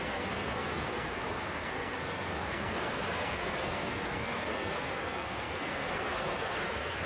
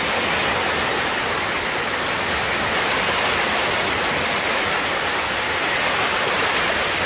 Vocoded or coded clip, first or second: first